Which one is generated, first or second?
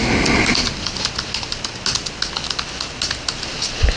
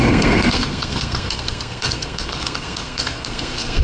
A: second